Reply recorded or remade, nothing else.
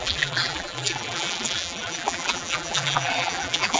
remade